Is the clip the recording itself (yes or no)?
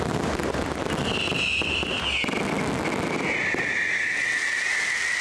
yes